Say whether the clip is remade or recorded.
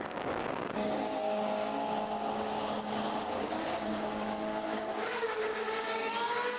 remade